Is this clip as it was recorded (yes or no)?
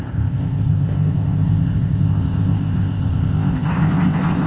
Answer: no